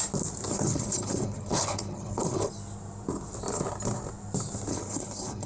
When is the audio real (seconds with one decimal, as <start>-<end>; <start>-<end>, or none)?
0.0-0.5; 2.5-4.7

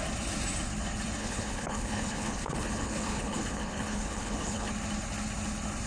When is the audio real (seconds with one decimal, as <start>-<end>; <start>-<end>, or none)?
0.0-1.2; 4.7-5.9